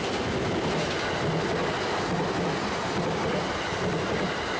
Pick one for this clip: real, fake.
real